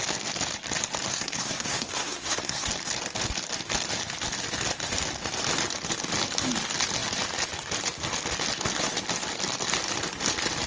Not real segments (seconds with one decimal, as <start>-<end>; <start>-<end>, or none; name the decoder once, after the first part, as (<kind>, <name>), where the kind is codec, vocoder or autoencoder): 1.1-2.7 (codec, SNAC)